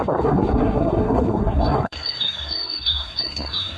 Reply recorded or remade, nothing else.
remade